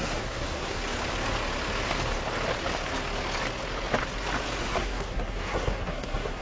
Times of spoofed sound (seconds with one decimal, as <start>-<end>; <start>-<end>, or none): 0.0-0.8; 4.6-6.4